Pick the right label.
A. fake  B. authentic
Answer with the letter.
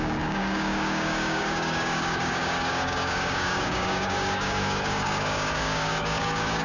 A